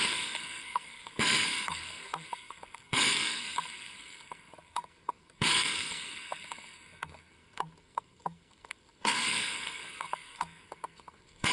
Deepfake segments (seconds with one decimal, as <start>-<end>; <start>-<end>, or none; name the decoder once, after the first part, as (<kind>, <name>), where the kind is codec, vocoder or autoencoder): 0.0-11.5 (codec, SNAC)